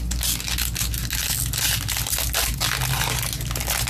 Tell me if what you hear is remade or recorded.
recorded